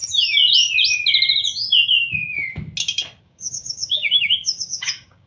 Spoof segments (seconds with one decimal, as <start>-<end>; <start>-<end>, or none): 3.2-5.3